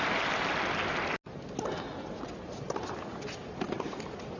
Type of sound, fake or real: real